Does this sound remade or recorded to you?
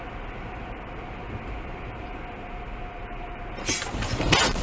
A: recorded